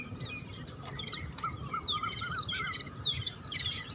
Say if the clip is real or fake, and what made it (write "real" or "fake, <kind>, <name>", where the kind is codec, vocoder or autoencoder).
fake, vocoder, BigVGAN v2